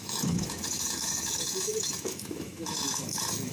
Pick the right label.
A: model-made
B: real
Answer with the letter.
A